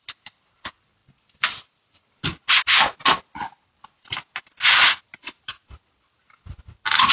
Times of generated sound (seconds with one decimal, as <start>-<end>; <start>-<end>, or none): none